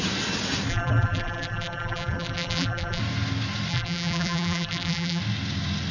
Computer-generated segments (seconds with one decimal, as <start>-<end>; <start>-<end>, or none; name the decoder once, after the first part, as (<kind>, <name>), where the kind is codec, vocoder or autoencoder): 0.7-3.0 (vocoder, BigVGAN v2); 3.7-5.2